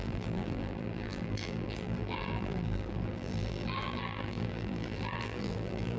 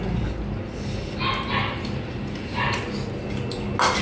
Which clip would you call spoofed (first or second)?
first